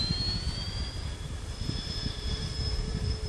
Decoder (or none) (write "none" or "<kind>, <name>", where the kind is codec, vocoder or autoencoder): vocoder, BigVGAN v2